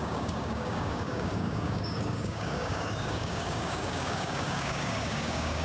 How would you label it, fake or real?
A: fake